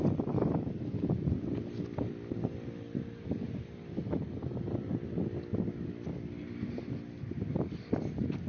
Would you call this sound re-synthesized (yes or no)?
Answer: no